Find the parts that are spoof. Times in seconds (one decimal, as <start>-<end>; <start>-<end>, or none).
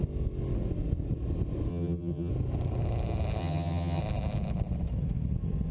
1.7-2.3; 3.4-4.0